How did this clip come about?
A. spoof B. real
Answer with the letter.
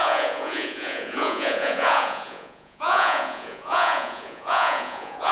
A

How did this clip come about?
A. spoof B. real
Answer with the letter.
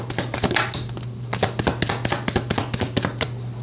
B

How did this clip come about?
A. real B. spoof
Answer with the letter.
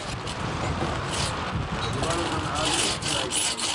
A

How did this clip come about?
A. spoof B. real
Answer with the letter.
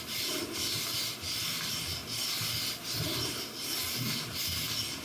B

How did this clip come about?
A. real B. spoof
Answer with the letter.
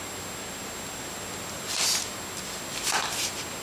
A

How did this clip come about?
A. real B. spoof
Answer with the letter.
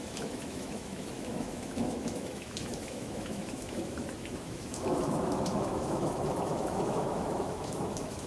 B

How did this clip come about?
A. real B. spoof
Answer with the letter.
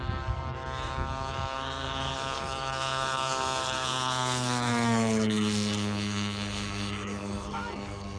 B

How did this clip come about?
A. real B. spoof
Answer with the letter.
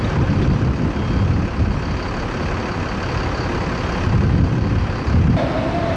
A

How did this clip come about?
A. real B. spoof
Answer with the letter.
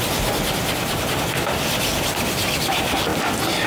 A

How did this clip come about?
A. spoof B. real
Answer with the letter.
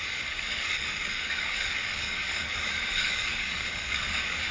A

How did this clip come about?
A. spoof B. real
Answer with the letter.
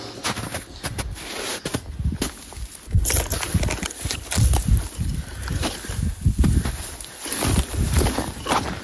B